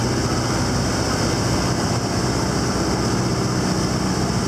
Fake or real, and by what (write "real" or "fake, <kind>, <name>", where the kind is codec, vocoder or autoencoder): real